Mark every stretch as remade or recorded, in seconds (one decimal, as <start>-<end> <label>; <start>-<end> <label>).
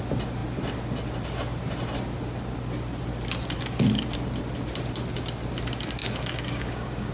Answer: 0.0-6.0 recorded; 6.0-7.1 remade